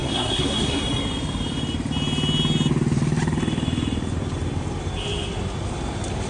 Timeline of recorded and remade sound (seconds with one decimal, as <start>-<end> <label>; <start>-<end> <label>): 0.0-0.8 remade; 0.8-6.3 recorded

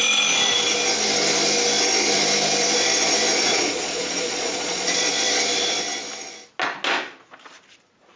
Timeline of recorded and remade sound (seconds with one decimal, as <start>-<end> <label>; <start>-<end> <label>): 0.0-3.3 recorded; 3.3-5.1 remade; 5.1-8.2 recorded

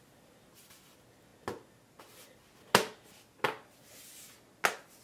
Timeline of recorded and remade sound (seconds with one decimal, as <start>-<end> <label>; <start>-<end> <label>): 0.0-5.0 recorded

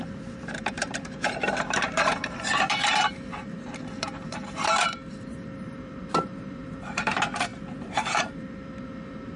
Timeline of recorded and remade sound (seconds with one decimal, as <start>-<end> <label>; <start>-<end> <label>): 0.0-9.4 remade

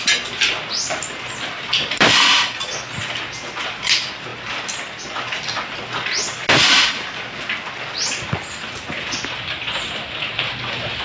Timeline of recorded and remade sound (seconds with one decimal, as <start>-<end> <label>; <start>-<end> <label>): 0.0-11.0 recorded

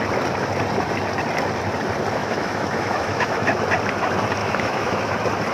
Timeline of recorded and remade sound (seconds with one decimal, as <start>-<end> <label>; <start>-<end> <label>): 0.0-2.2 recorded; 2.2-3.6 remade; 3.6-4.4 recorded; 4.4-5.0 remade; 5.0-5.5 recorded

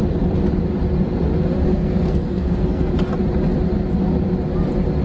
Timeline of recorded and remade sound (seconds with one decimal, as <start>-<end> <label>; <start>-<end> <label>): 0.0-1.7 recorded; 1.7-2.9 remade; 2.9-5.0 recorded